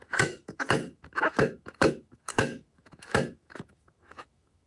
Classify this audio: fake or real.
fake